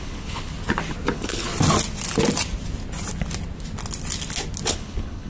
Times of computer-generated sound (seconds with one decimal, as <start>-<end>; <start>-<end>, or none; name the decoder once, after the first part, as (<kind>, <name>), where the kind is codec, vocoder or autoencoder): 0.0-0.5 (codec, HILCodec); 1.1-1.5; 4.7-5.3